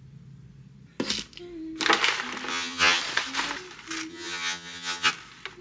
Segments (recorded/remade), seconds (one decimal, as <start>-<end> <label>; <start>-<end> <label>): 0.0-2.5 recorded; 2.5-3.0 remade; 3.0-4.1 recorded; 4.1-5.1 remade; 5.1-5.6 recorded

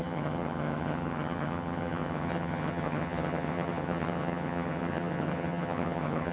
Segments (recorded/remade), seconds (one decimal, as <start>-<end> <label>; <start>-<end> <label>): 0.0-6.3 remade

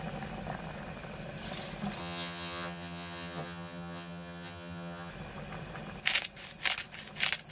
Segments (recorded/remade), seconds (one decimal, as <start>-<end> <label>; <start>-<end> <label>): 0.0-2.0 recorded; 2.0-5.1 remade; 5.1-7.5 recorded